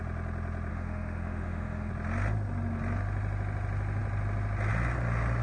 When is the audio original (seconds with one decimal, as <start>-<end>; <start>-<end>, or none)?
0.0-0.7; 1.9-5.4